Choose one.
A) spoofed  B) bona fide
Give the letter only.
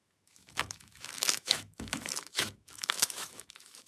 A